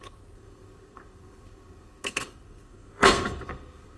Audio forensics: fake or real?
fake